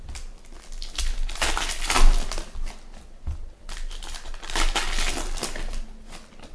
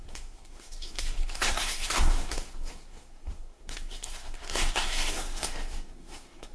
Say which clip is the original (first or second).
first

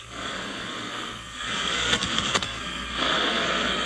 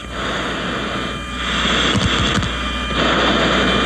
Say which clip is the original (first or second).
second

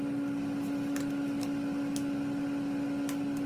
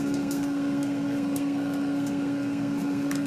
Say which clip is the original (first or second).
first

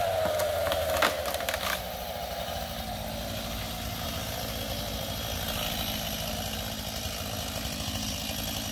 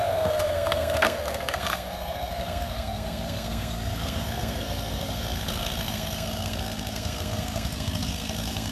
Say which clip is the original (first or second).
first